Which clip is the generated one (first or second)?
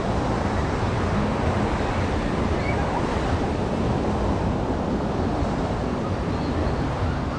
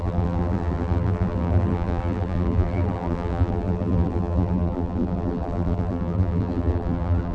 second